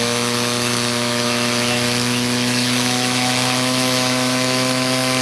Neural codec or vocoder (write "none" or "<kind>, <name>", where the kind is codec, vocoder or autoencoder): autoencoder, DAC-VAE